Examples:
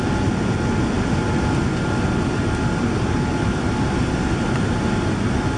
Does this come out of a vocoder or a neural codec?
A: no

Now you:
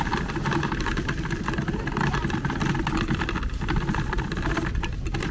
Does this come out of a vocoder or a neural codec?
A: no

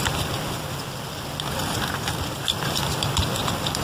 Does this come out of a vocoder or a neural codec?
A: no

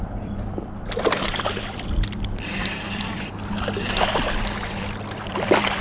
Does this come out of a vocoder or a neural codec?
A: yes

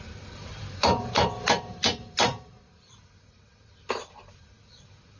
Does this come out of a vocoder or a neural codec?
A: yes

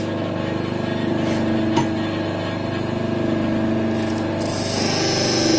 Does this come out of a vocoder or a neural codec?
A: no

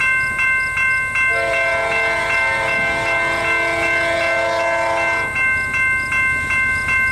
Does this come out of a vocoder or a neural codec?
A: no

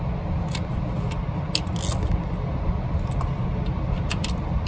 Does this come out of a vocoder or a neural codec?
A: no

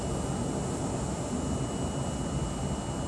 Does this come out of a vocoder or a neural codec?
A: no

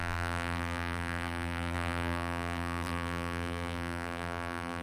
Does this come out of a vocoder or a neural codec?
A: yes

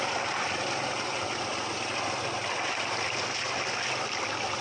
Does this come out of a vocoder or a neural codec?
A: no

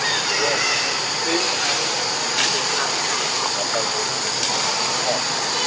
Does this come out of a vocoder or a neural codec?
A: no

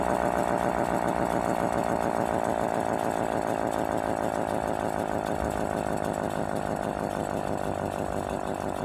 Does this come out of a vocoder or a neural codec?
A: no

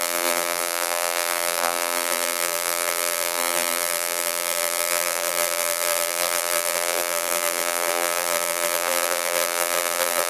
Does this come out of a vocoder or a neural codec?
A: yes